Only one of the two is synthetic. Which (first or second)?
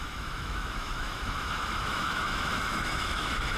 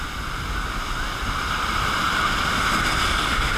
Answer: first